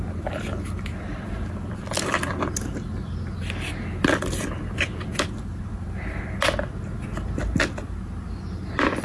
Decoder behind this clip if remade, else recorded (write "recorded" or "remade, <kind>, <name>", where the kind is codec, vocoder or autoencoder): recorded